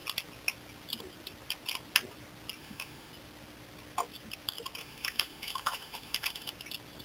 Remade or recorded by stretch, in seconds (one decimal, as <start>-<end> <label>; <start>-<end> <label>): 0.0-2.6 recorded; 2.6-3.1 remade; 3.1-4.8 recorded; 4.8-6.5 remade; 6.5-7.0 recorded